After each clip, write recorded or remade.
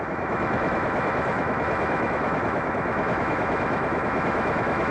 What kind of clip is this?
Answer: remade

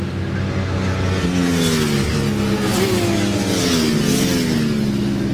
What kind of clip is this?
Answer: recorded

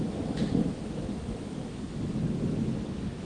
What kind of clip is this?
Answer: remade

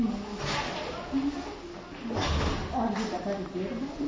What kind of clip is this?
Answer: recorded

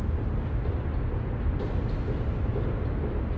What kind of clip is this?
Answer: recorded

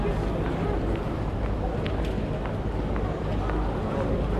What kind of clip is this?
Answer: recorded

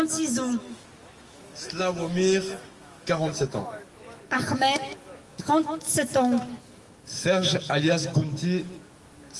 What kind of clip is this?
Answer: remade